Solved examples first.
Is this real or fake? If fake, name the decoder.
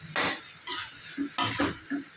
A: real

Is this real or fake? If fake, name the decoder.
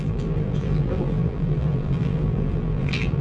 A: fake, vocoder, BigVGAN v2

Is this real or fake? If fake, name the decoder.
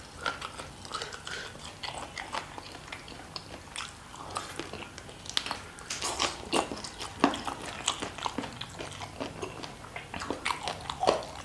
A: real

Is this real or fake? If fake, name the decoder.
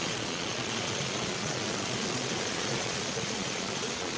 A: fake, vocoder, Vocos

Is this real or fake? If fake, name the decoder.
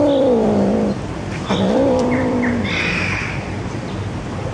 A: fake, vocoder, BigVGAN v2